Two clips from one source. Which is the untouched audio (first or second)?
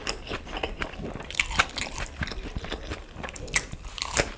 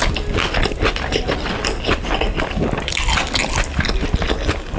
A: second